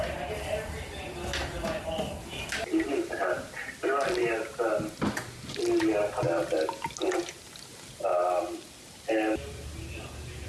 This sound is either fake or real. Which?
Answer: real